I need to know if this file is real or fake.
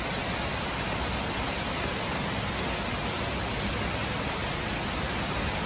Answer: real